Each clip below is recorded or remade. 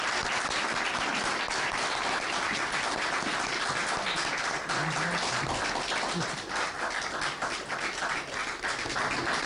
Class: recorded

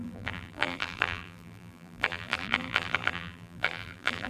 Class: remade